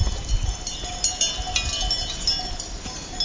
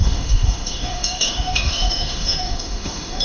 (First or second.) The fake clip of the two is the second